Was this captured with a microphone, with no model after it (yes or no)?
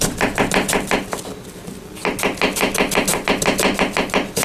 yes